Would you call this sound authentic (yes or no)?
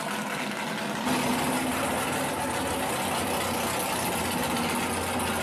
yes